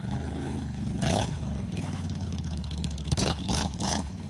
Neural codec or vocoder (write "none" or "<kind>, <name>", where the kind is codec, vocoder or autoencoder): codec, HILCodec